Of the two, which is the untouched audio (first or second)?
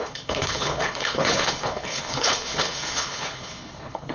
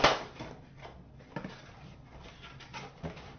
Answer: second